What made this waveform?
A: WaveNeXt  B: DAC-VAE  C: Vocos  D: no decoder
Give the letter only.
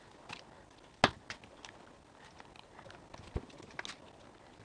D